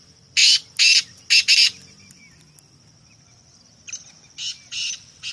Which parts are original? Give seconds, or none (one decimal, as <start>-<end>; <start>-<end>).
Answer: 0.0-5.3